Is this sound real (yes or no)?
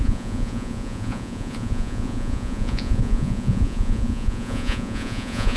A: no